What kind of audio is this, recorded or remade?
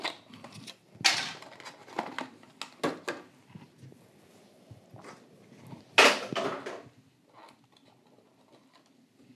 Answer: recorded